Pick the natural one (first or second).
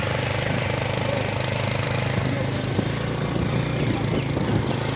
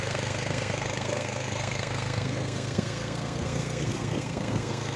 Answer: first